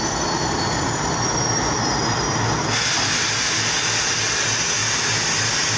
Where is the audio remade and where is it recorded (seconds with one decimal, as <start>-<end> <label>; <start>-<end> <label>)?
0.0-5.8 recorded